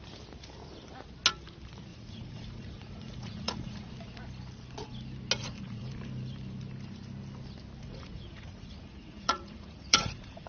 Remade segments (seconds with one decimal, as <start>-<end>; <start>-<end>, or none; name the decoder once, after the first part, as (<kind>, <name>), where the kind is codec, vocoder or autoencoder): 1.9-3.9 (vocoder, Vocos); 5.4-5.9; 7.8-10.5